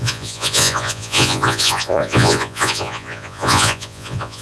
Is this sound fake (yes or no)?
yes